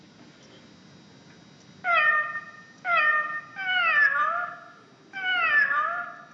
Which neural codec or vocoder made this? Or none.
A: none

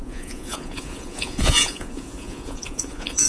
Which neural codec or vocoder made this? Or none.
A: vocoder, Vocos